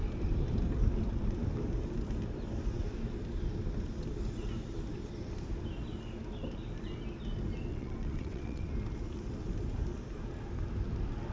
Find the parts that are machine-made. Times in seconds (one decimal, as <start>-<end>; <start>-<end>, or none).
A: 7.7-8.7